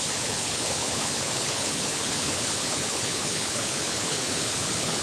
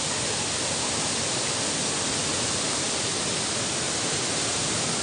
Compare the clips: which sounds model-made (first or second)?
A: first